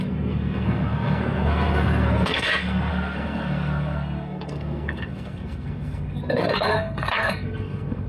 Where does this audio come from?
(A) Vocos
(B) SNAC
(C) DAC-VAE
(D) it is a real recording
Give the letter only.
B